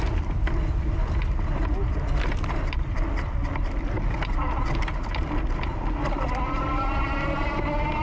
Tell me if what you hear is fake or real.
real